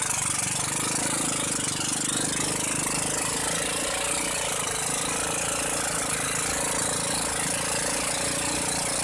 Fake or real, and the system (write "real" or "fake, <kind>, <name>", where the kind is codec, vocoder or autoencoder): real